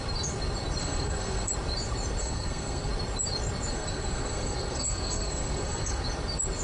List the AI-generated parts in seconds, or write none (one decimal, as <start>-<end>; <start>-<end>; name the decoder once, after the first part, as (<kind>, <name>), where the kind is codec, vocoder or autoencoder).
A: 0.8-1.5 (codec, SNAC); 2.2-2.9; 3.7-6.0